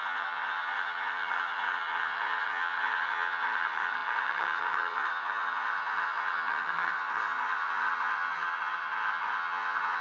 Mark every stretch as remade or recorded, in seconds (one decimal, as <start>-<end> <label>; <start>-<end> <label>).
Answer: 0.0-10.0 remade